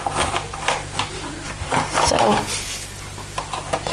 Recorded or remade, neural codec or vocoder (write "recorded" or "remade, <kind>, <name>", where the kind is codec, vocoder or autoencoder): recorded